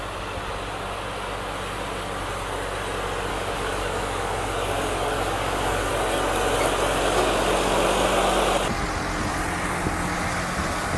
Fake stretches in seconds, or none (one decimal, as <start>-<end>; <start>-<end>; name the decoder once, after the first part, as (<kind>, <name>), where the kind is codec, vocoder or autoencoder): 3.3-5.9 (codec, DAC)